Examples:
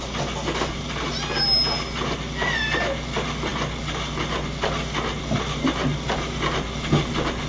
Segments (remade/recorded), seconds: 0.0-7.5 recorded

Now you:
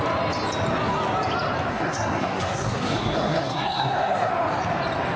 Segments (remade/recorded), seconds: 0.0-1.7 recorded; 1.7-4.3 remade; 4.3-5.2 recorded

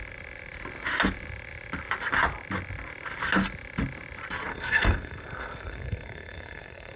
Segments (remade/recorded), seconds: 0.0-4.5 recorded; 4.5-7.0 remade

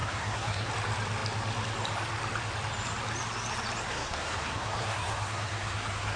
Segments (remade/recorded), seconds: 0.0-0.7 remade; 0.7-3.9 recorded; 3.9-6.2 remade

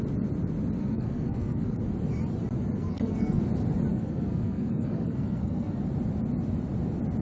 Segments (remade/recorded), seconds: 0.0-0.8 recorded; 0.8-1.8 remade; 1.8-2.8 recorded; 2.8-3.4 remade; 3.4-3.9 recorded; 3.9-5.8 remade; 5.8-7.2 recorded

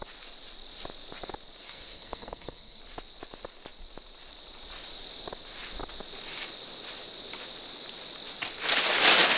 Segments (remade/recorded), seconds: 0.0-1.6 recorded; 1.6-2.8 remade; 2.8-9.4 recorded

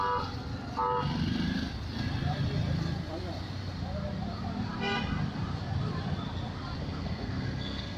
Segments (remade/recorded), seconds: 0.0-6.8 recorded; 6.8-8.0 remade

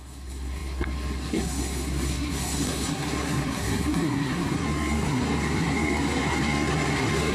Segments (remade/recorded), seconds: 0.0-7.3 remade